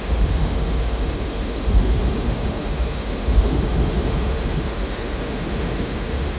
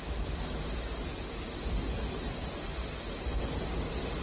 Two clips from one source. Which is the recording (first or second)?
second